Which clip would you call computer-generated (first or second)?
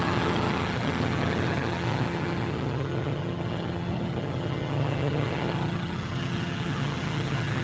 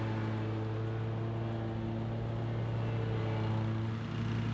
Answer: first